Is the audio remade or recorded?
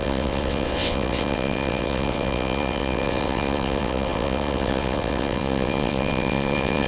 remade